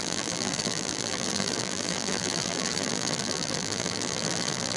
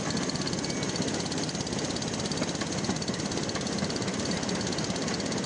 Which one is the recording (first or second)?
second